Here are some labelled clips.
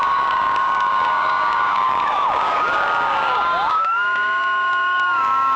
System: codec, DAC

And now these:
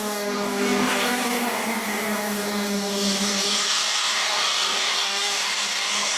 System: codec, DAC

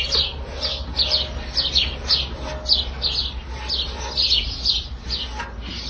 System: none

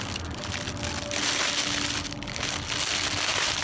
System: none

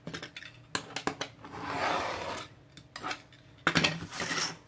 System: none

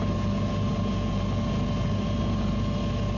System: none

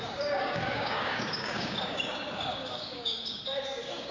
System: codec, DAC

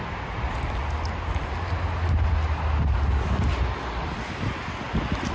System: none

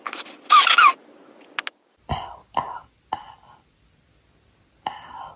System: none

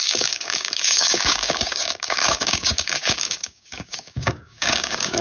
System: codec, DAC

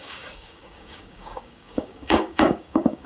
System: codec, DAC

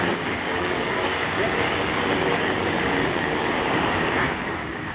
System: codec, DAC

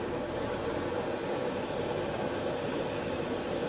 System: none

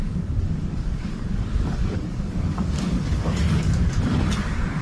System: codec, DAC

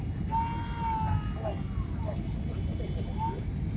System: none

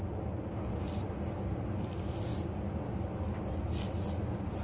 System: none